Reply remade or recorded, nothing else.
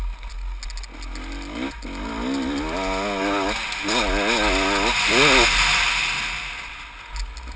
recorded